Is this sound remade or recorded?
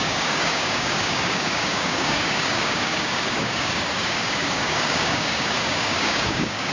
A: remade